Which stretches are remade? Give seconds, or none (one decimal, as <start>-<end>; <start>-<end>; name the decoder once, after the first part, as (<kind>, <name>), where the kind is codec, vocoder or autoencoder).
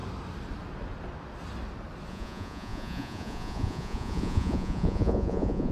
2.1-5.7 (vocoder, Vocos)